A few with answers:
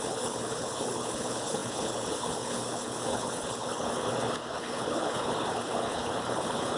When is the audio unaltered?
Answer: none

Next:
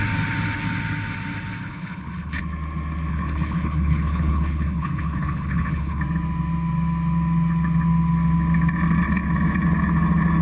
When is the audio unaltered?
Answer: 0.0-1.6; 2.4-3.1; 6.0-10.4

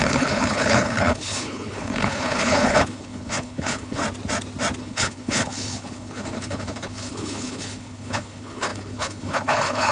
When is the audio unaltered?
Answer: 4.0-4.8

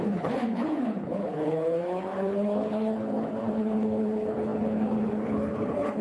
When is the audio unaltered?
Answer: none